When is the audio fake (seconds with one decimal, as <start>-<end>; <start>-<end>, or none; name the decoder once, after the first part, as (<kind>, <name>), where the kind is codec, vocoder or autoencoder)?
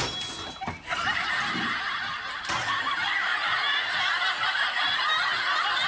3.3-4.2 (vocoder, Vocos)